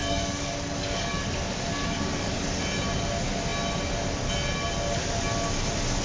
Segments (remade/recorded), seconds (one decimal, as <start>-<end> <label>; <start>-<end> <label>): 0.0-2.6 remade; 2.6-6.0 recorded